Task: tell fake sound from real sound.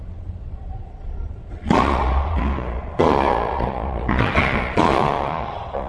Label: fake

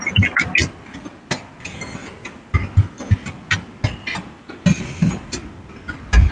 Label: real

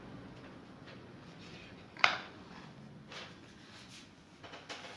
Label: fake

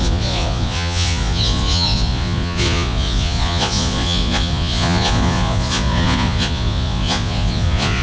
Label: fake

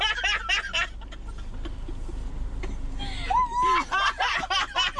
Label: real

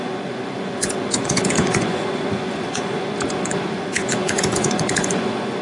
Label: fake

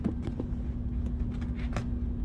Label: real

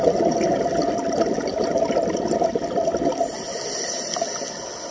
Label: real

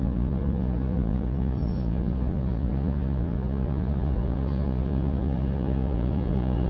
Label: fake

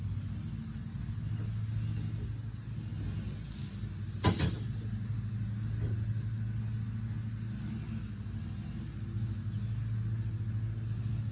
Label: real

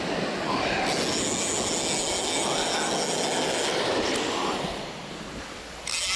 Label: real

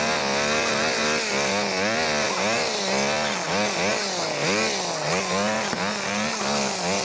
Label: real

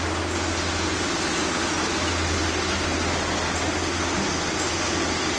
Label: real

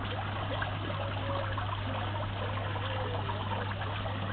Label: real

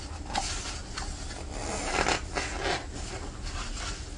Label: real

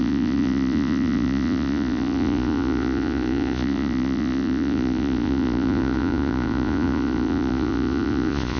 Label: fake